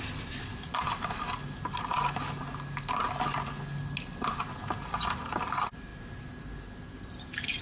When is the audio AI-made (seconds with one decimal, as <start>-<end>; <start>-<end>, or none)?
none